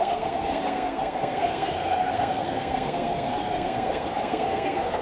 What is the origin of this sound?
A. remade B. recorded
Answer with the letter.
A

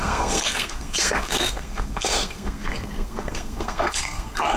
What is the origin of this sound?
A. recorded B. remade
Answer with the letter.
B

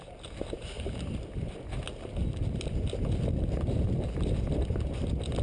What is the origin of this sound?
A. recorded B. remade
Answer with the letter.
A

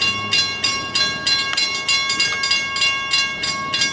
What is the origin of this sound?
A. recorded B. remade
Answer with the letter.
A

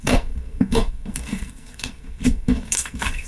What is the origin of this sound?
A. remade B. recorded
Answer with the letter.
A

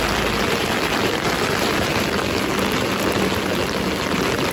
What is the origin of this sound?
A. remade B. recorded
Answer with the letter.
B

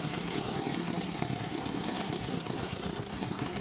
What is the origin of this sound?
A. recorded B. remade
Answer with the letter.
B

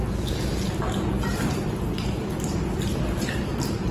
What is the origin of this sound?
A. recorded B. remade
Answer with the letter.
A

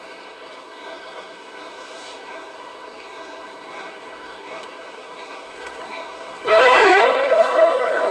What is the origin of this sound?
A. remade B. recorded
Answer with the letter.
A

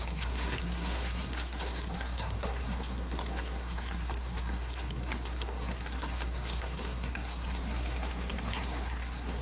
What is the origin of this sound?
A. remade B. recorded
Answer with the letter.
A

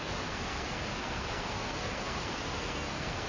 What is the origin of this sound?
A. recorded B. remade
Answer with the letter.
B